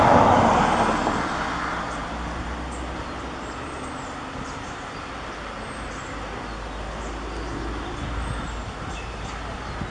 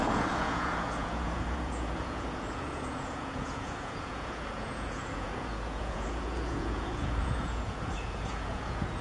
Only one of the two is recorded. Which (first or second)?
first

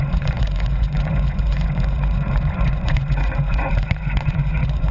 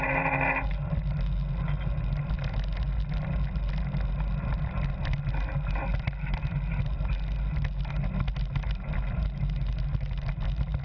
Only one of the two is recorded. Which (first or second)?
second